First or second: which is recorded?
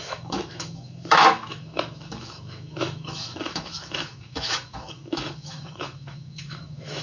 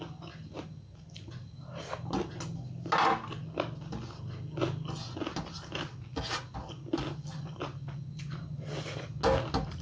second